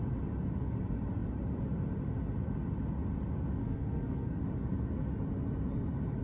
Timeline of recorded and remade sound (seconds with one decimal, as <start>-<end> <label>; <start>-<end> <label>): 0.0-3.6 recorded; 3.6-4.4 remade; 4.4-6.2 recorded